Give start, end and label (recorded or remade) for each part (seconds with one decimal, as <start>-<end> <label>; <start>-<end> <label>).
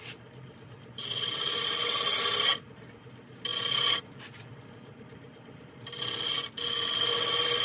0.0-7.6 recorded